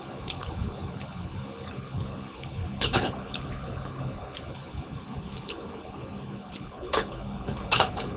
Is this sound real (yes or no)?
no